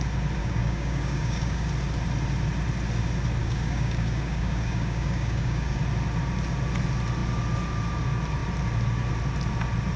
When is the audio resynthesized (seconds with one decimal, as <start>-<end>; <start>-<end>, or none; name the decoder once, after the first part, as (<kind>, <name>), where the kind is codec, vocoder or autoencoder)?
0.4-1.7 (codec, DAC); 3.4-5.8